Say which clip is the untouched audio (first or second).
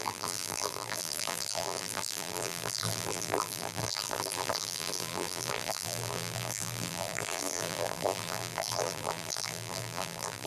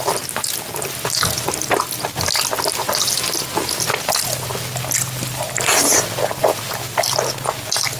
second